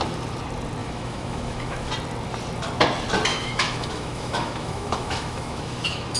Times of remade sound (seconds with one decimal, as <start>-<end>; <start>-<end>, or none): 0.8-1.9; 3.3-6.2